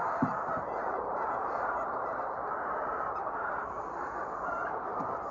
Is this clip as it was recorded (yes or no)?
no